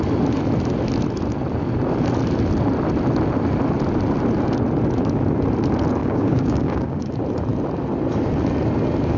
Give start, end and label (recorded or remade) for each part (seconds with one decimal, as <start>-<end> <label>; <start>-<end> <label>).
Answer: 0.0-6.0 recorded; 6.0-7.1 remade; 7.1-9.2 recorded